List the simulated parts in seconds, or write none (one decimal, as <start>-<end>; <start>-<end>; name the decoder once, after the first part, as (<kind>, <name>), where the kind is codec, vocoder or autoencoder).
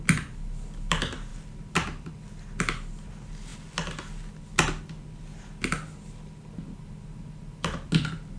none